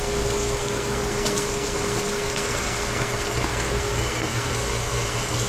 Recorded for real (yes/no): no